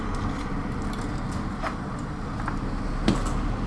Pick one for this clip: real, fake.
real